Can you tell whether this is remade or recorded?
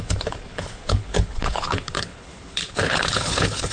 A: remade